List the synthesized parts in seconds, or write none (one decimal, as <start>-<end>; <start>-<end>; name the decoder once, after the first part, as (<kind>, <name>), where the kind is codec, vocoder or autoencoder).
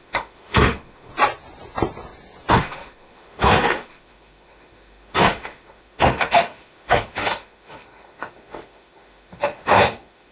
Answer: 0.0-1.1 (autoencoder, DAC-VAE); 2.5-10.3